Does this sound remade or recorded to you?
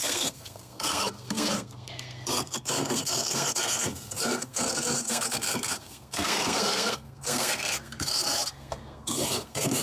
remade